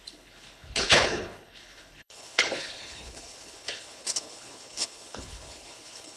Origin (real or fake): fake